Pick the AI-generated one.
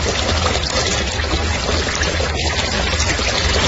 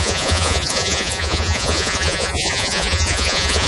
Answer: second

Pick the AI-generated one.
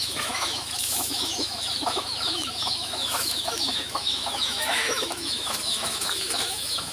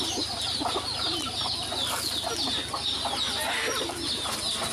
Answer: first